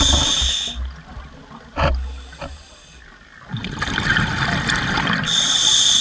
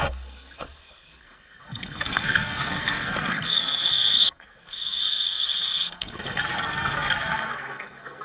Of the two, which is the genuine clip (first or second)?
first